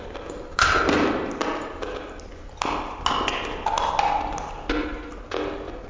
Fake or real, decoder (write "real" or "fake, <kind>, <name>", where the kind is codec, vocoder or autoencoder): real